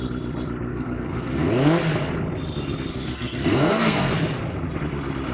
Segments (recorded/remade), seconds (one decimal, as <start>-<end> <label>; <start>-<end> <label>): 0.0-0.7 recorded; 0.7-1.5 remade; 1.5-2.9 recorded; 2.9-4.1 remade; 4.1-5.3 recorded